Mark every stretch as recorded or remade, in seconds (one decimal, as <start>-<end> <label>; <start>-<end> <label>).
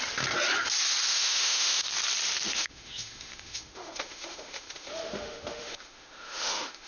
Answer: 0.0-1.1 recorded; 1.1-1.9 remade; 1.9-2.5 recorded; 2.5-6.9 remade